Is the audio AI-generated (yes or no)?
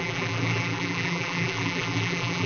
yes